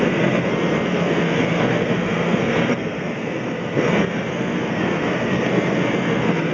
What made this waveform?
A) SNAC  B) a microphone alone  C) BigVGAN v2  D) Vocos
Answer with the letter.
A